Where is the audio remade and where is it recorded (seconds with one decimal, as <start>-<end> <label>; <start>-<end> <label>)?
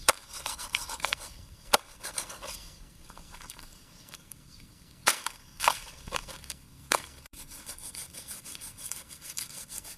0.0-10.0 remade